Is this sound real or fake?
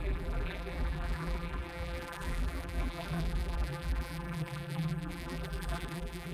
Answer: fake